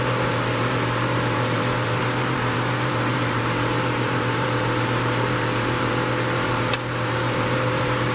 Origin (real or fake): fake